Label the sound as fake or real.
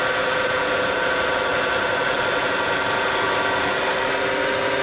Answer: real